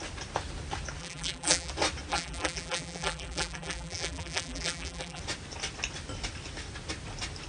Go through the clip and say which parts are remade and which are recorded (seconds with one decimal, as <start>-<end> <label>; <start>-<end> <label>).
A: 0.0-1.0 recorded; 1.0-1.7 remade; 1.7-2.1 recorded; 2.1-5.2 remade; 5.2-7.5 recorded